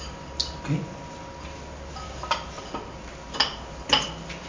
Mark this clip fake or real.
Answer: real